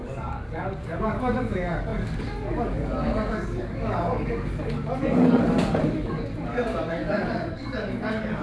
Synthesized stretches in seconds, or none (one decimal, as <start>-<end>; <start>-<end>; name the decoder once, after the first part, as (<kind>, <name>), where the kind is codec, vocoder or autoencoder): 0.0-8.4 (codec, DAC)